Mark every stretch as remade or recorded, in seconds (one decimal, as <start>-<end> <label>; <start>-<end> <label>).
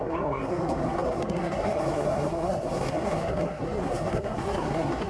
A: 0.0-5.1 remade